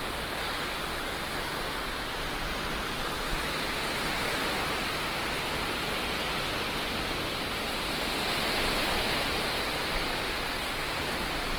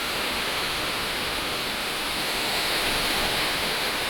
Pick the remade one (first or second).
second